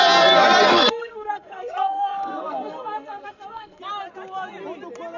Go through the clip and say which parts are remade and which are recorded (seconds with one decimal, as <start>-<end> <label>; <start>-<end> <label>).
0.0-0.7 recorded; 0.7-3.8 remade; 3.8-5.2 recorded